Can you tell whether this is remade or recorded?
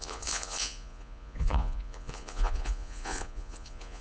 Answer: remade